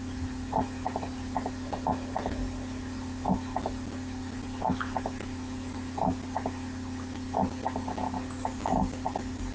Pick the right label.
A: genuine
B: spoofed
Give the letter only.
A